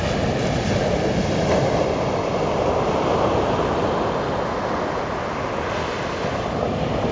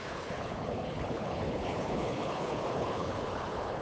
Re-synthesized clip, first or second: second